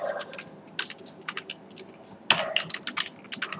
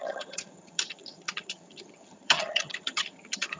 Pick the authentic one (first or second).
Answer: first